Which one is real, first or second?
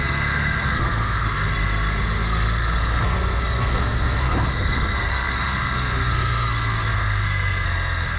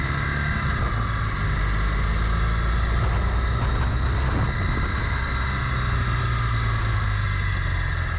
second